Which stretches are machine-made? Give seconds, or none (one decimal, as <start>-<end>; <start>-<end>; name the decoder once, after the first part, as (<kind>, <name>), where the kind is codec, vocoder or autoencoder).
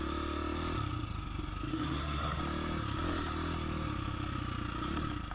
1.7-2.4 (codec, SNAC)